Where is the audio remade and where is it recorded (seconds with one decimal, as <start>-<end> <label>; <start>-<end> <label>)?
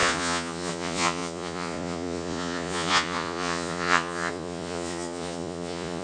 0.0-6.0 remade